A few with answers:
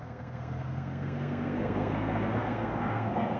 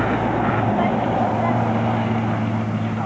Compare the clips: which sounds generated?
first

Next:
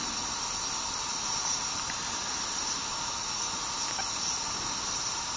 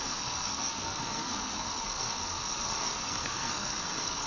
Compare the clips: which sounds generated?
second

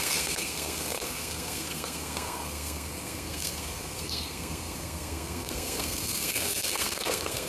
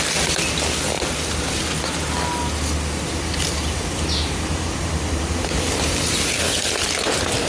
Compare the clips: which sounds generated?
first